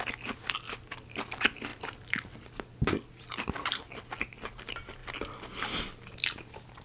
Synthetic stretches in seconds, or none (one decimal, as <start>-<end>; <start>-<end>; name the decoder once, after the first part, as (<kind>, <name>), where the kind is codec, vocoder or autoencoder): none